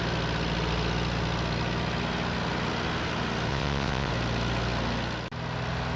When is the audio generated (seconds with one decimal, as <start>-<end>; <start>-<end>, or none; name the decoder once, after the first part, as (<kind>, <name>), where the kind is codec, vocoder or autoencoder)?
3.5-4.1 (vocoder, WaveNeXt)